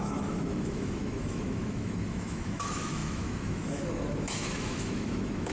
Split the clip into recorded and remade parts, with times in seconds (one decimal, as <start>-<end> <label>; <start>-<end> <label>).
0.0-5.5 remade